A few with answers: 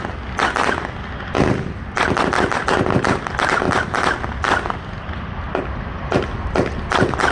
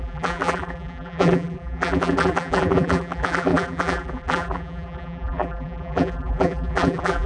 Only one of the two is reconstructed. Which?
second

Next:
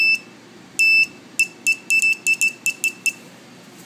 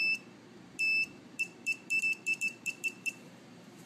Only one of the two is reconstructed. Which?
second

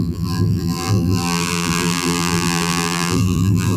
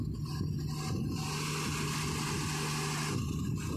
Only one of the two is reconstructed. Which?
first